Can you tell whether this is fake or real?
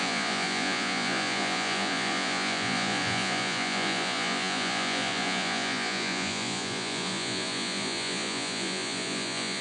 fake